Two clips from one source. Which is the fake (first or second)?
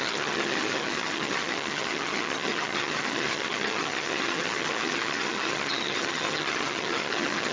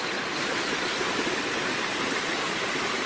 first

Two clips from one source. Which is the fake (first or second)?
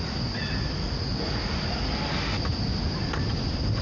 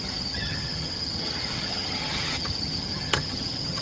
second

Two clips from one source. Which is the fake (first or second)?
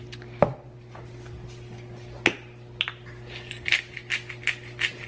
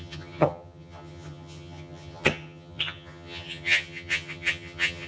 second